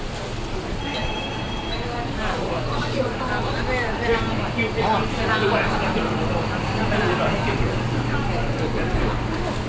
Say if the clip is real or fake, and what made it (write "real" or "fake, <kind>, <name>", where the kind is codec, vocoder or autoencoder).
real